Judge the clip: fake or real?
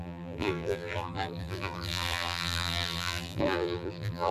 fake